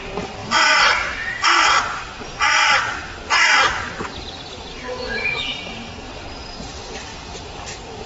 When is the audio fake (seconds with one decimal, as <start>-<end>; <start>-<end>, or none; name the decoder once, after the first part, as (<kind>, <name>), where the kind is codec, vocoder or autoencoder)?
0.4-1.7 (autoencoder, DAC-VAE); 4.7-6.1